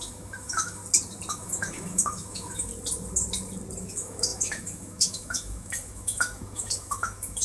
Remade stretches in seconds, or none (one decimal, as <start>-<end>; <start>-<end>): 0.0-0.8; 1.3-2.7; 3.8-7.4